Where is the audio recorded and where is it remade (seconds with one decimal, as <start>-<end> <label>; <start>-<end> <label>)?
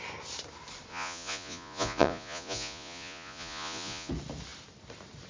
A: 0.0-0.9 recorded; 0.9-4.1 remade; 4.1-5.3 recorded